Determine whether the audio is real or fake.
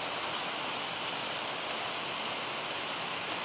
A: real